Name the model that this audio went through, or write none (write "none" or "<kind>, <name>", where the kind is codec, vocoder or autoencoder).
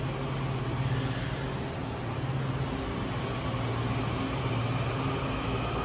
none